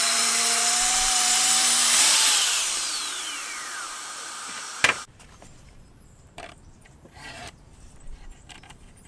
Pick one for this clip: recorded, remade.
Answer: remade